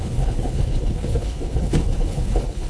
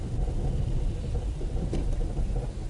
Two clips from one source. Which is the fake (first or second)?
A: first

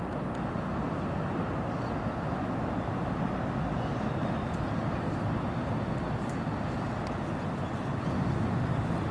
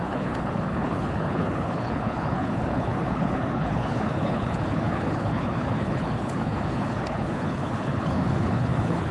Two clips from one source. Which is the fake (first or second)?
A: second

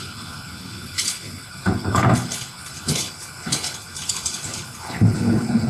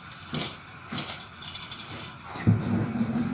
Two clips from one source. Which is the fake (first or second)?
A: first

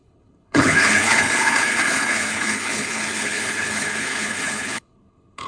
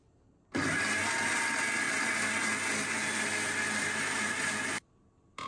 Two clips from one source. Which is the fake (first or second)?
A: first